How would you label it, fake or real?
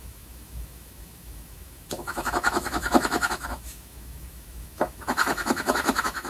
fake